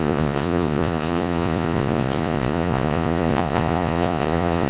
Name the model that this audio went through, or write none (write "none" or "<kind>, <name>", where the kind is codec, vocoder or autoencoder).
vocoder, Vocos